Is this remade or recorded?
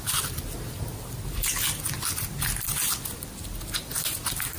recorded